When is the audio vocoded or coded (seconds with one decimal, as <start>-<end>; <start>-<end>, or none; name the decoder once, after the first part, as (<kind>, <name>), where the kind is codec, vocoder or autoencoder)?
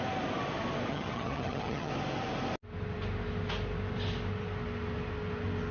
0.9-1.9 (vocoder, HiFi-GAN)